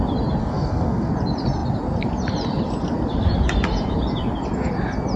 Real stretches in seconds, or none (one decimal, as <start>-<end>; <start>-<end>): 0.0-0.4; 1.1-5.2